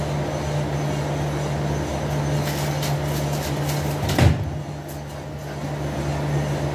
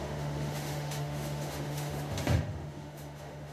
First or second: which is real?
first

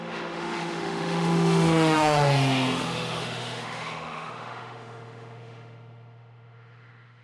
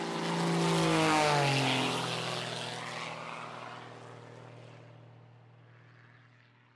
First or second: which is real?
second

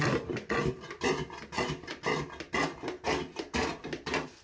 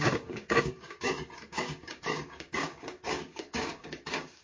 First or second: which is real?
first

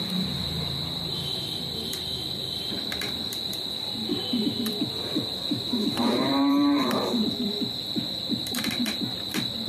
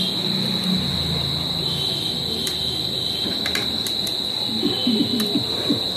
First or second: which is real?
second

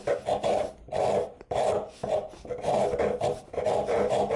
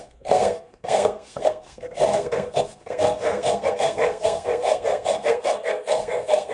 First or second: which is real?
first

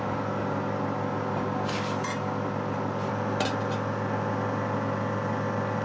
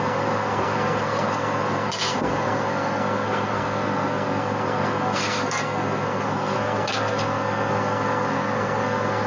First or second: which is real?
first